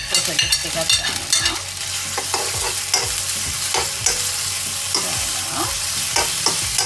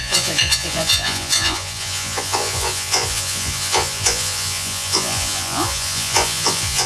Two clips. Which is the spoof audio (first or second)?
second